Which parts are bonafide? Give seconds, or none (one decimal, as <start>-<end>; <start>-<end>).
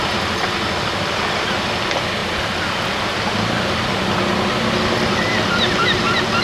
0.0-6.4